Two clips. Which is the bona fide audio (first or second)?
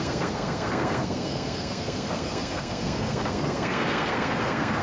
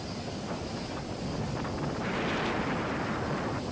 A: second